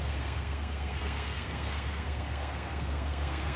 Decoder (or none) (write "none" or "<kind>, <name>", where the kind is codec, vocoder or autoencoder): codec, SNAC